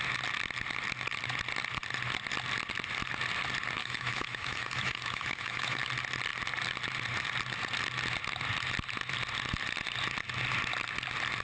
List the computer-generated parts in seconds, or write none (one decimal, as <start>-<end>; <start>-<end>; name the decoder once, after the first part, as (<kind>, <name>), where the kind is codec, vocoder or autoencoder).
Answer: 3.8-5.8 (autoencoder, DAC-VAE)

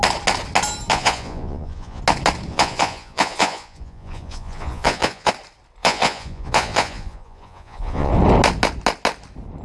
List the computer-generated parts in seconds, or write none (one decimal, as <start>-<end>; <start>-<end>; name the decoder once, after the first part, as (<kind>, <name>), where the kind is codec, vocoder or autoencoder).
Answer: 0.9-2.0 (vocoder, Vocos); 2.5-5.3; 5.8-8.1